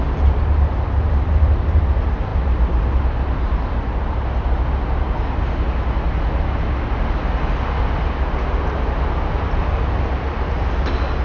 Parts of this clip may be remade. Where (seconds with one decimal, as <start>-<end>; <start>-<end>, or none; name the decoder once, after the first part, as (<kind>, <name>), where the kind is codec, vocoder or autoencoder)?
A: none